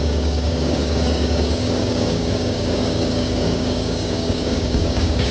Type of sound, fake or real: fake